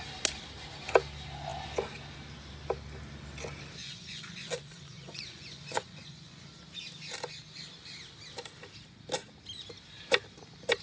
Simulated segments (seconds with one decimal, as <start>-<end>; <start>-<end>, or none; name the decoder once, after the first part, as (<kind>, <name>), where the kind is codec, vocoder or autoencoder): 3.8-6.5 (vocoder, Vocos)